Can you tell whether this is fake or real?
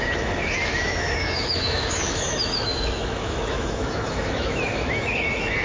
fake